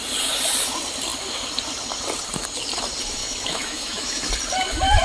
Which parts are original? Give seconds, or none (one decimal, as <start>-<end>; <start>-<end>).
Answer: 0.0-3.2; 4.3-5.0